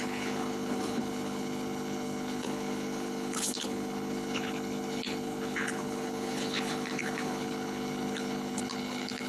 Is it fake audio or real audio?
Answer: fake